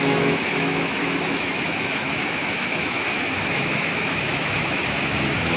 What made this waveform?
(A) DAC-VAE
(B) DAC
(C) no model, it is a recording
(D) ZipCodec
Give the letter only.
A